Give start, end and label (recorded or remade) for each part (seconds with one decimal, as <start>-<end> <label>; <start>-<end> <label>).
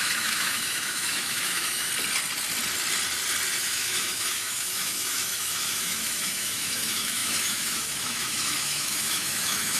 0.0-1.9 remade; 1.9-3.6 recorded; 3.6-9.8 remade